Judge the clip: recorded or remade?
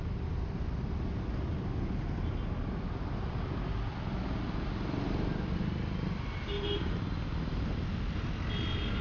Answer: recorded